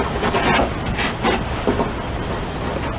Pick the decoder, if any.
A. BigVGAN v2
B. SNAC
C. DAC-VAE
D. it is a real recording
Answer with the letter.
D